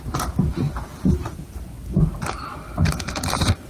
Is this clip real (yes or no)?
yes